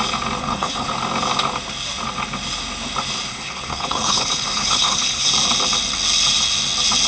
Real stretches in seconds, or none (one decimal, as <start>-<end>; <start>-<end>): 0.0-0.4; 0.9-3.3; 5.3-7.1